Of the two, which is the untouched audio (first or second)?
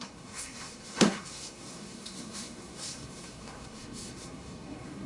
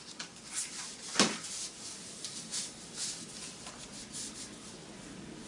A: second